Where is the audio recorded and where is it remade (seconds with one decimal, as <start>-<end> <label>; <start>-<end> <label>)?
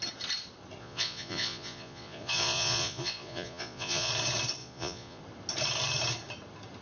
0.0-0.8 recorded; 0.8-4.1 remade; 4.1-4.6 recorded; 4.6-5.2 remade; 5.2-6.8 recorded